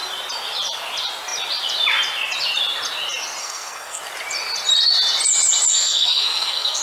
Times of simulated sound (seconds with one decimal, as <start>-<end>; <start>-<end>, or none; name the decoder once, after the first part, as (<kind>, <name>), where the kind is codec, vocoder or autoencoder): 3.4-4.0 (codec, SNAC); 5.7-6.8